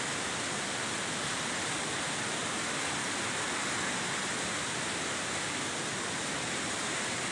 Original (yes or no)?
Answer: yes